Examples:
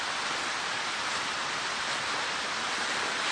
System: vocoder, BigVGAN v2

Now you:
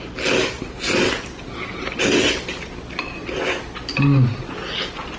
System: none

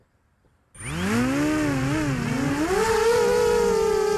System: none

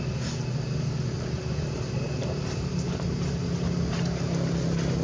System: none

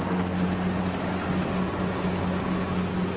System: none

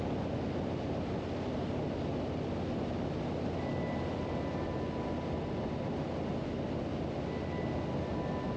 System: none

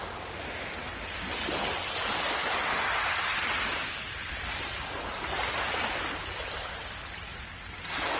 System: none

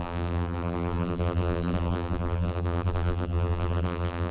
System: vocoder, BigVGAN v2